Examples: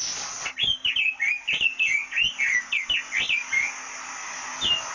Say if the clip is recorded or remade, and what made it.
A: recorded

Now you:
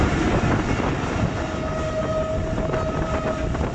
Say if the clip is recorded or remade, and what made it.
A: recorded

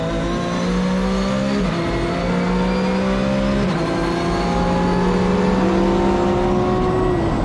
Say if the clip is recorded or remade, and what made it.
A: recorded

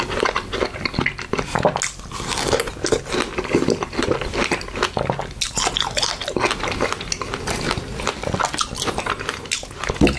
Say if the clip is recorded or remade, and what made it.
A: recorded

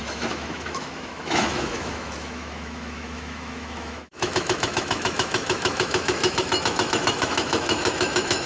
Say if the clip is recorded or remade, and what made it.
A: remade, autoencoder, DAC-VAE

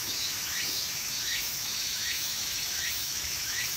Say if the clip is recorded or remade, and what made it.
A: remade, autoencoder, DAC-VAE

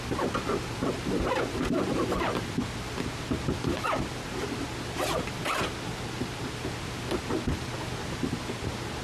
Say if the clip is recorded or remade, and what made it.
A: recorded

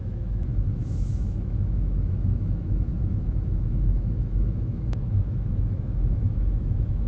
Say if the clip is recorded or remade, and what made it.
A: remade, autoencoder, DAC-VAE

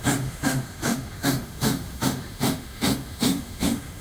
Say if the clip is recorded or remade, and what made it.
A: remade, autoencoder, DAC-VAE